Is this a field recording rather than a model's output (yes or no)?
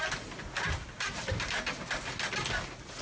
yes